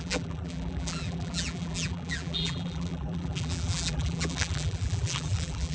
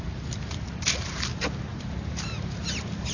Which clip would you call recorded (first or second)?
second